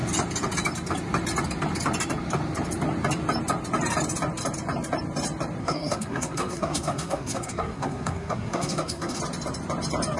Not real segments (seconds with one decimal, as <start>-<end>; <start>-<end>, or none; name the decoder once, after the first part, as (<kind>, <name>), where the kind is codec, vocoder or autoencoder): 5.6-9.2 (codec, SNAC)